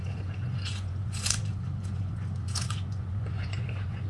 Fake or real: fake